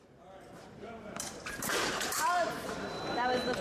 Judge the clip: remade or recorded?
remade